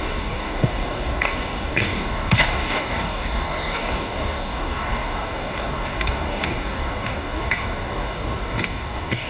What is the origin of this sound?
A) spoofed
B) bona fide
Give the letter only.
A